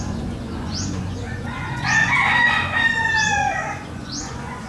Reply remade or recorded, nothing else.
remade